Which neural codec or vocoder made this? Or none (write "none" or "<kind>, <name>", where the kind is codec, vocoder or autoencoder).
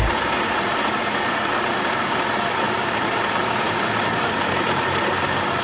none